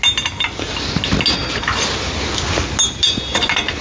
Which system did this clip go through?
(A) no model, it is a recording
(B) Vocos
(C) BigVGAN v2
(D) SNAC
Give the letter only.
A